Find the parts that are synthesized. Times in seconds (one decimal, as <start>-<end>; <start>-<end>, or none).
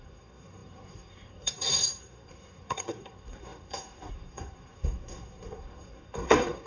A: 0.0-6.7